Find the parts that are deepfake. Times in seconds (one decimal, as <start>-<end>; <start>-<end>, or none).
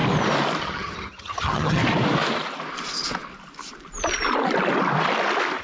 0.6-1.8